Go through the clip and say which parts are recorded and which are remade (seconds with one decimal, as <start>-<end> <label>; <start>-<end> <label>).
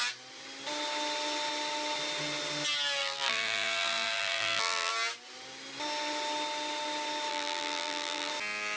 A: 0.0-3.0 recorded; 3.0-4.9 remade; 4.9-7.3 recorded; 7.3-8.3 remade; 8.3-8.8 recorded